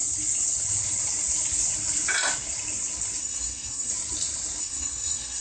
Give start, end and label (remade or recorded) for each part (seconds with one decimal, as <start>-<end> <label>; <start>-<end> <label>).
0.0-3.2 recorded; 3.2-3.9 remade; 3.9-4.6 recorded; 4.6-5.4 remade